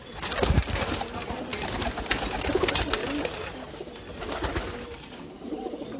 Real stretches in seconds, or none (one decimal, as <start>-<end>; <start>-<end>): 0.0-6.0